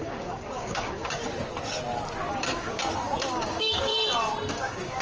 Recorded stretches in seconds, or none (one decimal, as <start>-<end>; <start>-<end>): 1.2-2.3; 2.8-3.3; 3.9-4.5